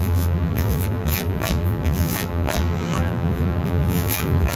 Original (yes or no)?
no